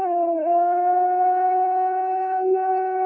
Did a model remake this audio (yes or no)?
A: yes